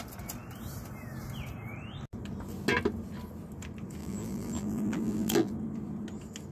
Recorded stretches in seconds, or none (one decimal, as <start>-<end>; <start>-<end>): 0.0-4.0; 5.5-6.5